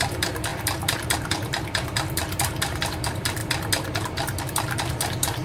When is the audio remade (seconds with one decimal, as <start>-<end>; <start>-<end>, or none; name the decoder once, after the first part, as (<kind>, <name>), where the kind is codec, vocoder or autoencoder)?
0.0-3.4 (vocoder, BigVGAN v2); 4.4-5.4